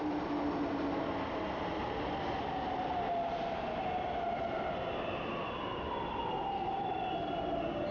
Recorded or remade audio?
recorded